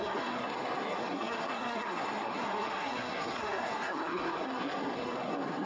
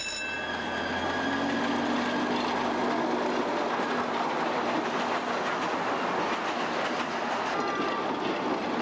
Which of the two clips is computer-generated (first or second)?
first